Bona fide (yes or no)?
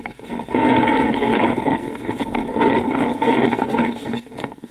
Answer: no